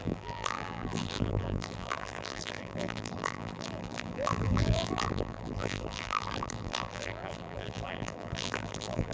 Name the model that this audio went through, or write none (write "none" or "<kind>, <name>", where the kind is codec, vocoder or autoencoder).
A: vocoder, BigVGAN v2